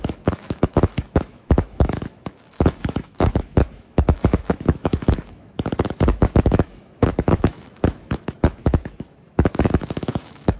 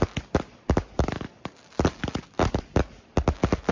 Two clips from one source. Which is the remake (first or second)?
first